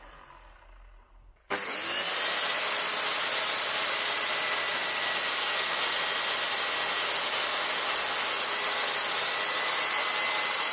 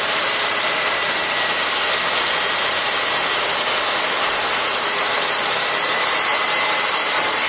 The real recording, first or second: first